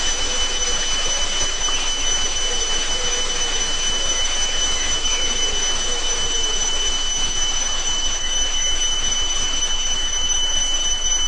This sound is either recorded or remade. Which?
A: remade